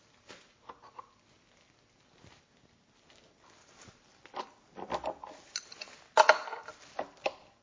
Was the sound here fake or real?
real